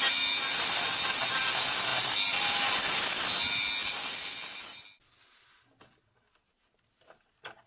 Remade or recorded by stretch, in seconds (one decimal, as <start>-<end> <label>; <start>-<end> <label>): 0.0-7.7 recorded